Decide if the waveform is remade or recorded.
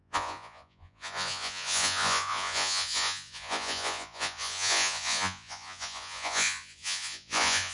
remade